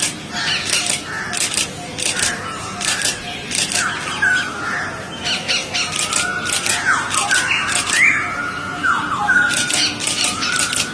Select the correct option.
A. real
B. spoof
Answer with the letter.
A